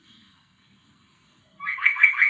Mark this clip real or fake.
fake